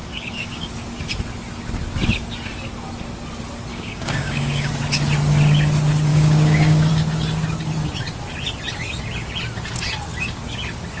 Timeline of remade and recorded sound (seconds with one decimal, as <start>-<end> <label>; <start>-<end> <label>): 0.0-0.7 remade; 0.7-3.7 recorded; 3.7-4.7 remade; 4.7-6.1 recorded; 6.1-6.9 remade; 6.9-11.0 recorded